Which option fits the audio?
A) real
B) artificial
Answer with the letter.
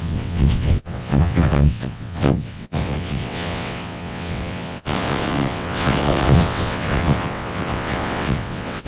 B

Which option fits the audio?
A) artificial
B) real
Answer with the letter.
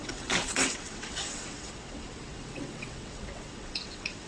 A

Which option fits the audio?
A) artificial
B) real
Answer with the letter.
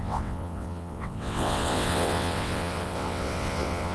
A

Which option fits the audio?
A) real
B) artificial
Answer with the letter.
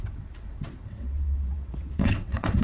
B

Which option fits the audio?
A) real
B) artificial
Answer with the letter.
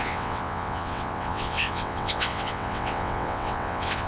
B